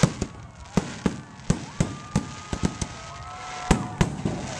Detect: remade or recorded recorded